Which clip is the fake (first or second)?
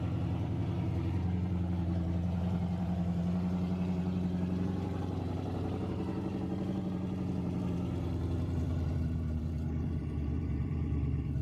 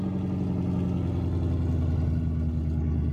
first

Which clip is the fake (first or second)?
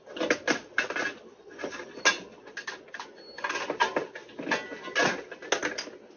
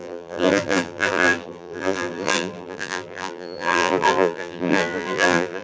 second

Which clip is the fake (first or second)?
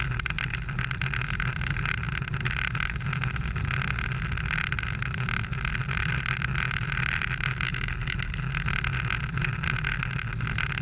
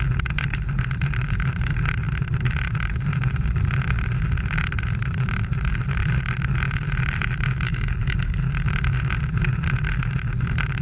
second